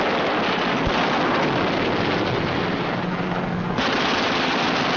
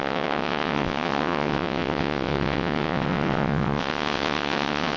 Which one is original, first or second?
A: first